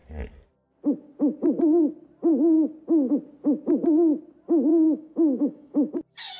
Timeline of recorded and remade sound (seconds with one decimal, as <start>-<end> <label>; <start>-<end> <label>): 0.0-4.7 recorded; 4.7-5.9 remade; 5.9-6.4 recorded